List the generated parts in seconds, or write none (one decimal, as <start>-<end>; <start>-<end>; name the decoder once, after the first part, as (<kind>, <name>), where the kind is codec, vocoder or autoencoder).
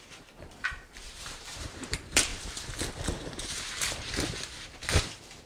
0.0-2.3 (vocoder, BigVGAN v2); 3.2-5.5